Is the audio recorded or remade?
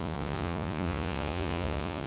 remade